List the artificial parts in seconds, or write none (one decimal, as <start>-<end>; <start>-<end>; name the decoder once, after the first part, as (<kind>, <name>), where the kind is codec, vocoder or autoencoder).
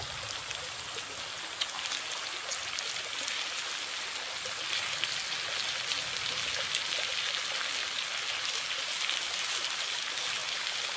none